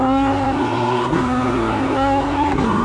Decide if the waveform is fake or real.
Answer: fake